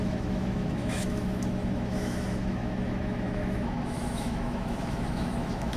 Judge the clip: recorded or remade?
remade